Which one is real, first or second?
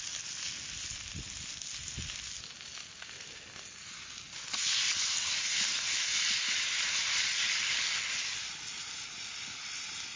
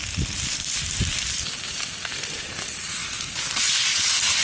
first